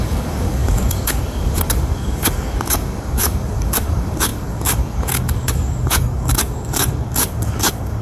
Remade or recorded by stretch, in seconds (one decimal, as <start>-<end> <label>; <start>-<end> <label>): 0.0-8.0 remade